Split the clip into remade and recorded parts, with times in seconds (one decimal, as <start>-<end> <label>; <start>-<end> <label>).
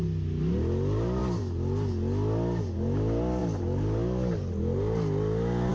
0.0-5.7 recorded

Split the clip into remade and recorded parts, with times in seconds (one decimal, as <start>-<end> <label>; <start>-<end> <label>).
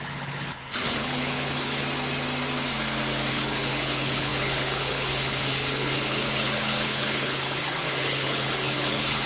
0.0-1.8 remade; 1.8-3.3 recorded; 3.3-9.3 remade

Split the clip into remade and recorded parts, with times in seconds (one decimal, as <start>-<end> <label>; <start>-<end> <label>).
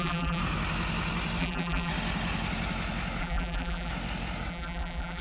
0.0-0.4 remade; 0.4-1.4 recorded; 1.4-1.9 remade; 1.9-3.2 recorded; 3.2-3.9 remade; 3.9-4.5 recorded; 4.5-5.2 remade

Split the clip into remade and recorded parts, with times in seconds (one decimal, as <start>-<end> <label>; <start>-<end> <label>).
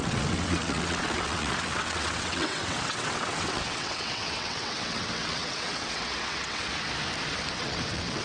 0.0-6.7 remade; 6.7-7.5 recorded; 7.5-8.2 remade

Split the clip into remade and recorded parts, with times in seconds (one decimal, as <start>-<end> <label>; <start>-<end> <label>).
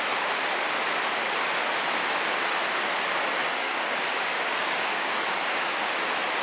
0.0-3.4 recorded; 3.4-5.1 remade; 5.1-6.4 recorded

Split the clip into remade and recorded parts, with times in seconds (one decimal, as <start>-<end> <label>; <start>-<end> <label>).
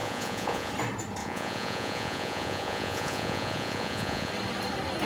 0.0-0.7 remade; 0.7-1.2 recorded; 1.2-4.3 remade; 4.3-5.1 recorded